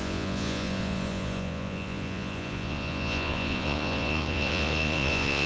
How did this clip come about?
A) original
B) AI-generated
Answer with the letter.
B